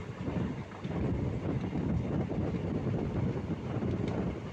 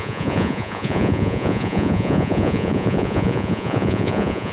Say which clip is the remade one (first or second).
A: second